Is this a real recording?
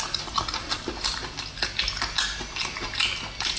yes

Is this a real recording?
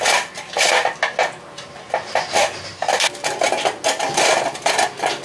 yes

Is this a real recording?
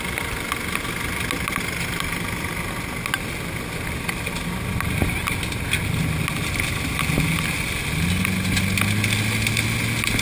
yes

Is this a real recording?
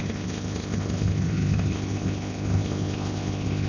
no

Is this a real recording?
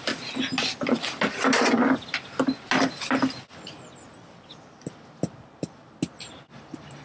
yes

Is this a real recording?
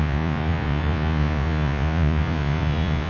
no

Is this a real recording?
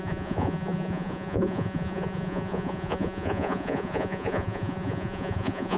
no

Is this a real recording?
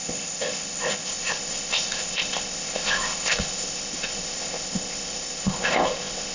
no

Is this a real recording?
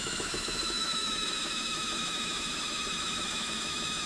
no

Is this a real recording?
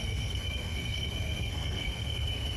no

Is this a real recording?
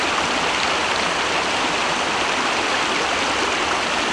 yes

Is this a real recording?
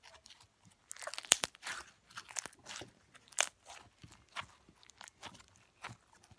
yes